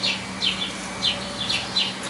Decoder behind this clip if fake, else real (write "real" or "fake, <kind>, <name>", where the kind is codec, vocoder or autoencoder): real